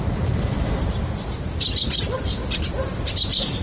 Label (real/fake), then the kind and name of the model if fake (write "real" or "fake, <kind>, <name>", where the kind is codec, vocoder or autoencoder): real